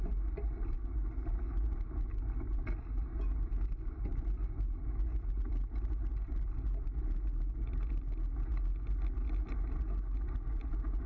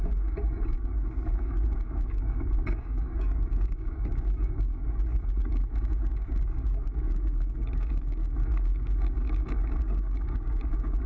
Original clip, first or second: first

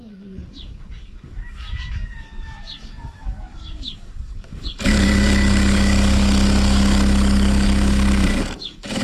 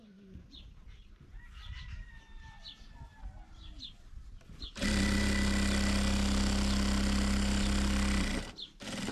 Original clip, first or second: second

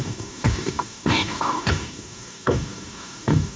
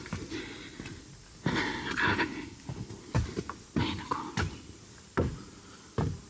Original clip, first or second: second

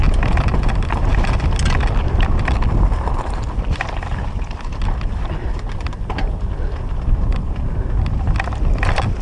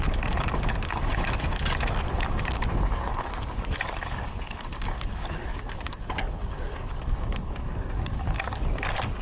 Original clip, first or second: first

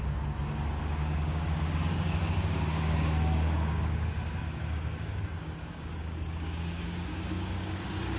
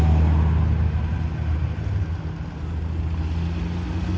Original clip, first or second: second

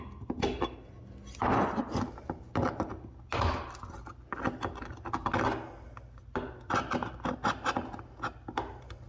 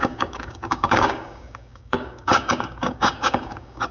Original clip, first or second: first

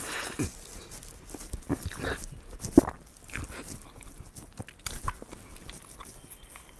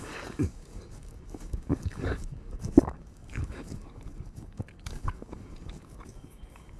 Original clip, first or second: first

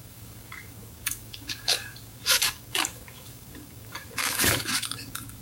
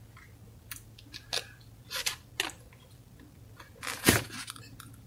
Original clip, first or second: second